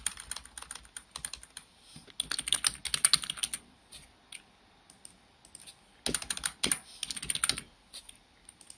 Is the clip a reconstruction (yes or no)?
no